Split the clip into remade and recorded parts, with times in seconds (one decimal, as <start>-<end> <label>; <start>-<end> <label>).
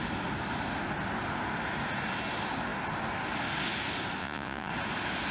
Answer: 0.0-4.2 recorded; 4.2-4.7 remade; 4.7-5.3 recorded